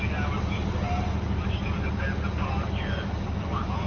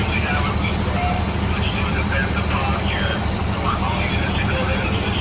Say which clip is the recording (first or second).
first